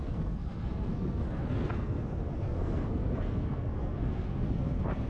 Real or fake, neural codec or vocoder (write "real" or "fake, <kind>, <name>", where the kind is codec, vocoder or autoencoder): fake, codec, SNAC